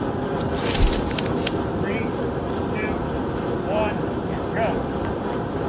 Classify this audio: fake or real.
fake